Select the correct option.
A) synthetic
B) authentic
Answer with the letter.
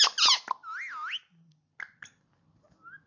B